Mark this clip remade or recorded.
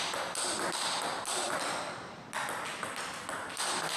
recorded